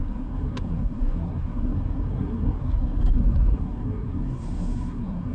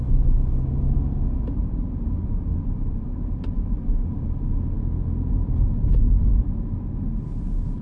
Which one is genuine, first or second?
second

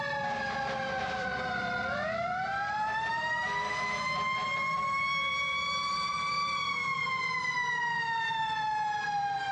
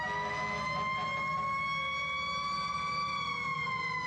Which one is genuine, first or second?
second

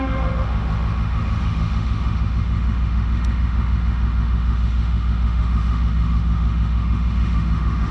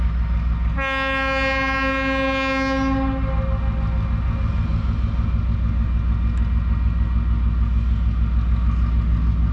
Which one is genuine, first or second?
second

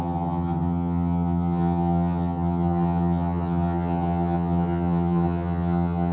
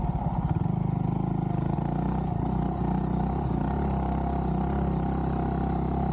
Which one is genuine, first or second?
second